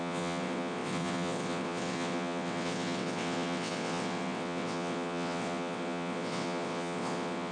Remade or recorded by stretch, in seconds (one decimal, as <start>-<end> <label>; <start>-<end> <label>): 0.0-7.5 remade